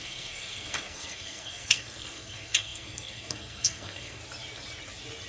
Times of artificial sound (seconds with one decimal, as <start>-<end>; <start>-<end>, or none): 0.0-4.2